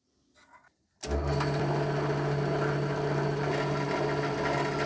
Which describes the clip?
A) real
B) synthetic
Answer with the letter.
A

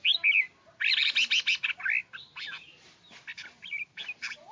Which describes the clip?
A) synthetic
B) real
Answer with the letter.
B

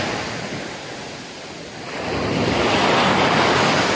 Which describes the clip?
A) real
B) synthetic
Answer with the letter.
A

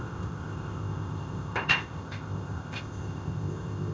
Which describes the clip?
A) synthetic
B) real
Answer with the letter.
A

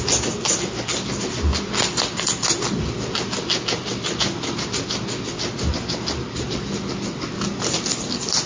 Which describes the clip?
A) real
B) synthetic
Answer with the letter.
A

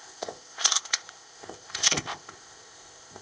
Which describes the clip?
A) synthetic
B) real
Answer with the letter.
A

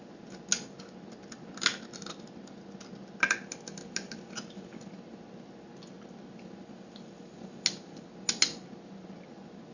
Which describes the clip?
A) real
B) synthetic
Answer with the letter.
A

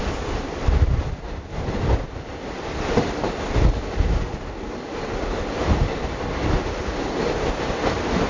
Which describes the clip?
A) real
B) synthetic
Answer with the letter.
A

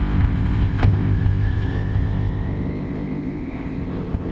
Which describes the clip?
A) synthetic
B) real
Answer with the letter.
A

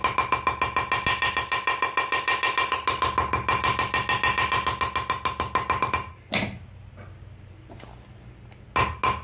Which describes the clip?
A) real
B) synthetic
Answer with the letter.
A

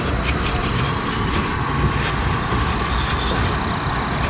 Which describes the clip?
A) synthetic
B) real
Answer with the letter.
B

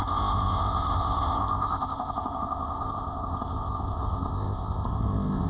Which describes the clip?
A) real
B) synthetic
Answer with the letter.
B